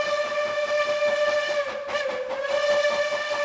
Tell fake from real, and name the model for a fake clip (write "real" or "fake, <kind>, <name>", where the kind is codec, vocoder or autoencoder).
real